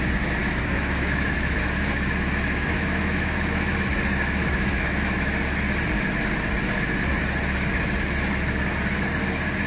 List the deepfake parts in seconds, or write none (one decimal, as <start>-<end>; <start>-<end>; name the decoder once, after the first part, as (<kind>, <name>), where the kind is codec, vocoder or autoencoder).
0.4-3.7 (autoencoder, DAC-VAE); 4.4-5.4